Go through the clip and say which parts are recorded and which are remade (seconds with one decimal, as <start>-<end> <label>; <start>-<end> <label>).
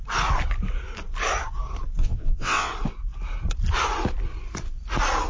0.0-2.0 recorded; 2.0-2.7 remade; 2.7-5.3 recorded